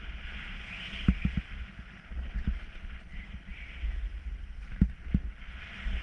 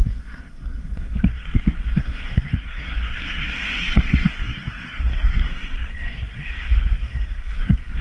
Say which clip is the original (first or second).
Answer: first